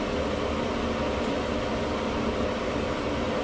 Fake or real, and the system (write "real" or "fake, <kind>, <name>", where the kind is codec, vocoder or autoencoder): real